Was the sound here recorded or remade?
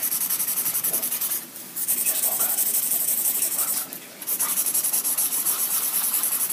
remade